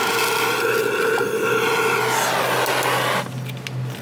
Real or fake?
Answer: real